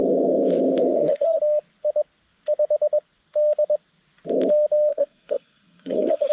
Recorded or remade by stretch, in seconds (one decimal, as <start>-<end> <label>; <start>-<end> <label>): 0.0-0.9 recorded; 0.9-1.4 remade; 1.4-4.9 recorded; 4.9-6.3 remade